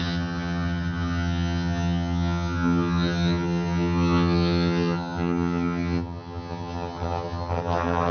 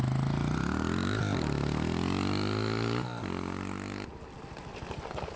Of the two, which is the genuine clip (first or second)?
second